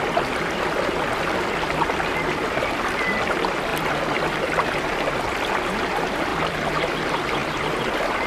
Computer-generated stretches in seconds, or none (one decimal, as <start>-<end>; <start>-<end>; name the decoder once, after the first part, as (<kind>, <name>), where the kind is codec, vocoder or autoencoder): none